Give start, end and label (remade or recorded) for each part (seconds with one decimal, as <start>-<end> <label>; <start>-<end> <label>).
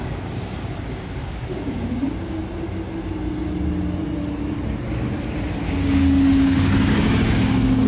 0.0-2.4 remade; 2.4-5.7 recorded; 5.7-7.9 remade